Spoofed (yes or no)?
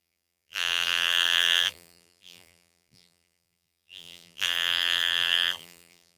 yes